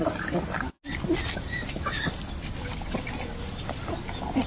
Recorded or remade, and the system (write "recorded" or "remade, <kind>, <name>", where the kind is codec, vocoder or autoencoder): recorded